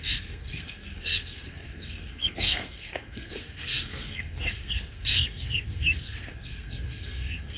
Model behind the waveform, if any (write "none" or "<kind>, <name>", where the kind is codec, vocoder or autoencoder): codec, SNAC